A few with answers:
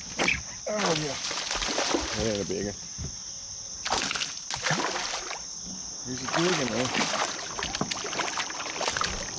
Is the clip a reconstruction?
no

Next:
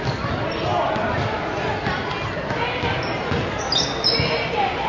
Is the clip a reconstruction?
no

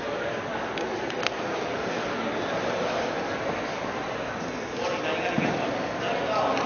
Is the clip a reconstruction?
no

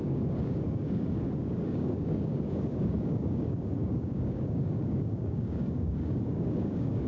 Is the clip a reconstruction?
yes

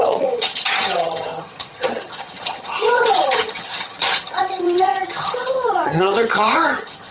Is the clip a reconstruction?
yes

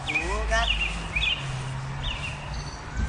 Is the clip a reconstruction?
no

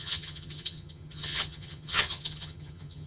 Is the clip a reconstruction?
yes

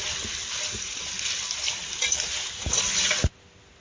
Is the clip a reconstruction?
no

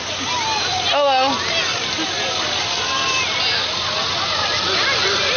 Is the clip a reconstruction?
no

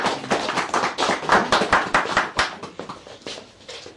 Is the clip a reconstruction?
yes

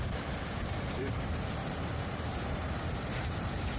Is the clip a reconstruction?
yes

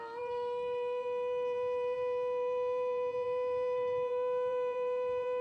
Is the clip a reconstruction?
yes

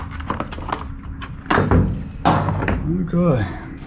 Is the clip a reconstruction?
no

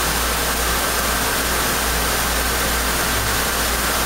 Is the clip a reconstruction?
no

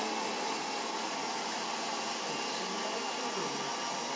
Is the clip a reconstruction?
no